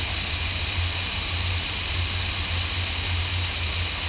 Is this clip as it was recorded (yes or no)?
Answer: yes